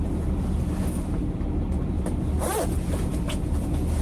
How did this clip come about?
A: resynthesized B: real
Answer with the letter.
B